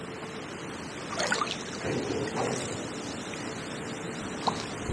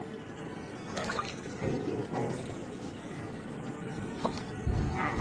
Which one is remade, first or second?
second